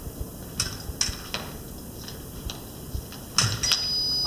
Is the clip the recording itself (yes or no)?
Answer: yes